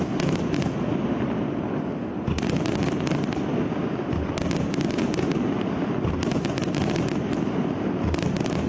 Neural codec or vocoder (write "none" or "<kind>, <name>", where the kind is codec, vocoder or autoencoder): none